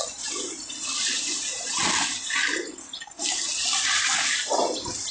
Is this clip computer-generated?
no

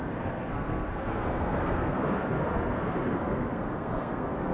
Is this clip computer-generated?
yes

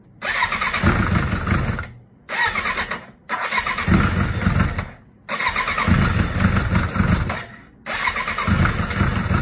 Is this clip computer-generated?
no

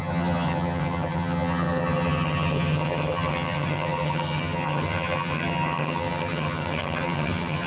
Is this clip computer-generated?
yes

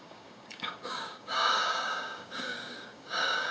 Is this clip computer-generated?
yes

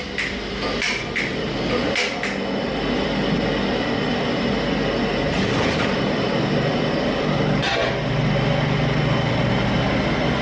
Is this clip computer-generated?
no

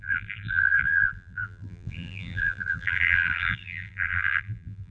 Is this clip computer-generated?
yes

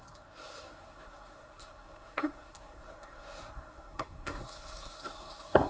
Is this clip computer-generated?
yes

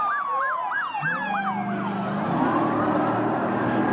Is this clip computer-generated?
no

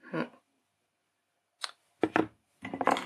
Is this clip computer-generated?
no